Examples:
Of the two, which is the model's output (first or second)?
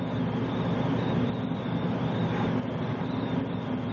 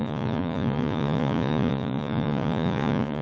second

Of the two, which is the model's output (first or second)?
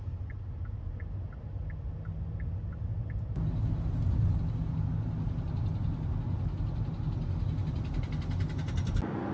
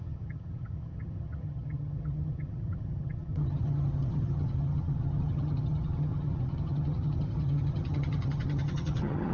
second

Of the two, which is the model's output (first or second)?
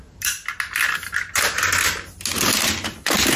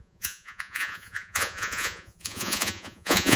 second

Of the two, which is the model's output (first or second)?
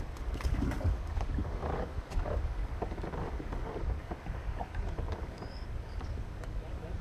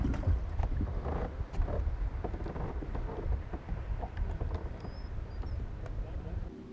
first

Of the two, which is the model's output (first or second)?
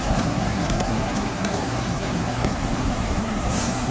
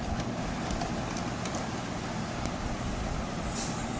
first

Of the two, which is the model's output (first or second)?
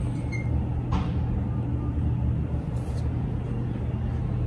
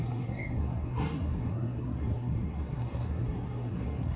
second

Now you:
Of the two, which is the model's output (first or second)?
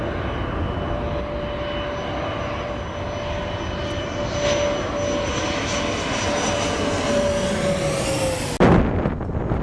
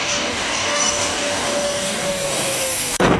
second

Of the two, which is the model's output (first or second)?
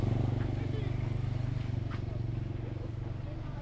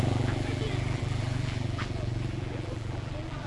second